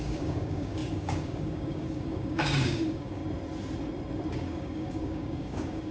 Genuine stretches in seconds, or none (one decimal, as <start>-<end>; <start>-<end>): 3.2-4.3